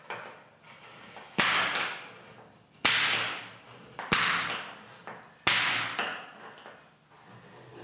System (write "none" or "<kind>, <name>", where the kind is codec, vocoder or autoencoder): none